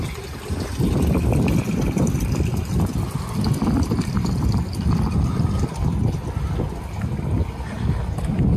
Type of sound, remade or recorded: recorded